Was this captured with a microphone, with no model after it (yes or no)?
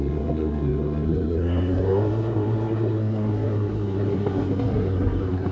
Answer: no